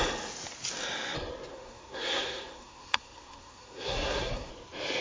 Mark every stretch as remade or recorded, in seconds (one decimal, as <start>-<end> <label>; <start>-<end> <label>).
0.0-1.5 recorded; 1.5-4.5 remade; 4.5-5.0 recorded